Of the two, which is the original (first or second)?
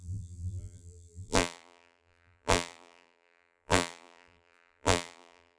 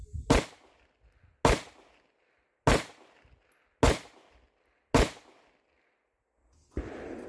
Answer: second